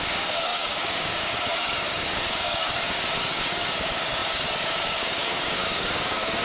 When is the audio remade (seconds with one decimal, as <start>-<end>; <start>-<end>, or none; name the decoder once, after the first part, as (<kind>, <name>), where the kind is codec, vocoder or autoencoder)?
0.0-6.4 (codec, DAC)